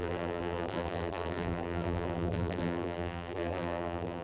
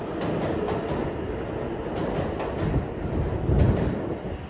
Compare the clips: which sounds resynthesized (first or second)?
first